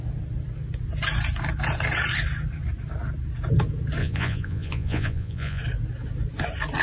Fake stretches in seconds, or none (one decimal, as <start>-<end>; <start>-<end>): 4.0-5.6